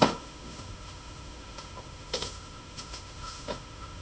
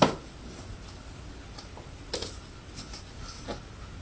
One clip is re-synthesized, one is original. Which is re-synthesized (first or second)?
first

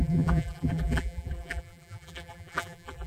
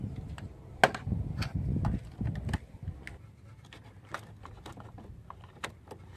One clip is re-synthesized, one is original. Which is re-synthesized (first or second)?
first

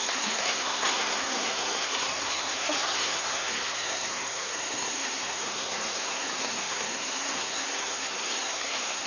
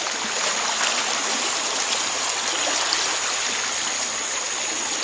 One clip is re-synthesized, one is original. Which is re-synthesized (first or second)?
first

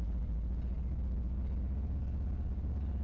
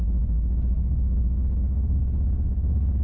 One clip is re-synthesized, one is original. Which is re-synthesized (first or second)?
second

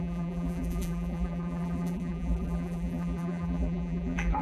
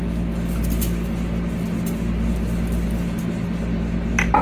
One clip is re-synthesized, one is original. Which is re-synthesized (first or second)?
first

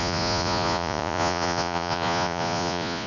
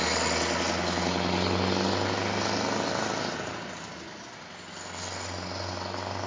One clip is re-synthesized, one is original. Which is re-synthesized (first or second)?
first